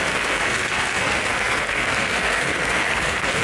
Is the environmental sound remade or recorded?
remade